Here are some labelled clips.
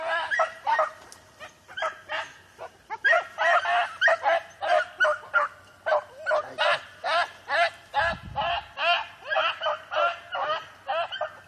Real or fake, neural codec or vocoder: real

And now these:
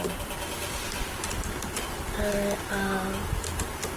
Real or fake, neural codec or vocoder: real